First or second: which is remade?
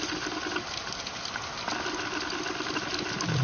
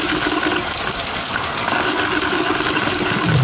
second